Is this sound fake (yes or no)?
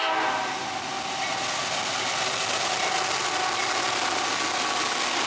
no